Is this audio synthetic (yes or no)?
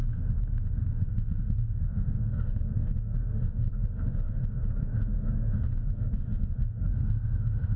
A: yes